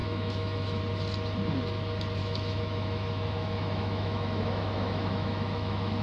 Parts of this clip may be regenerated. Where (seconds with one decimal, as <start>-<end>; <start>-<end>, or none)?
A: 0.0-0.8; 2.2-6.0